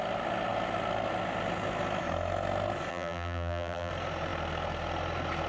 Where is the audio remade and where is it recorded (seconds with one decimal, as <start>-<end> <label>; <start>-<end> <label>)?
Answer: 0.0-2.9 recorded; 2.9-3.9 remade; 3.9-5.5 recorded